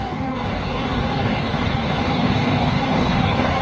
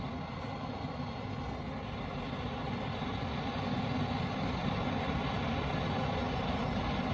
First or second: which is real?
second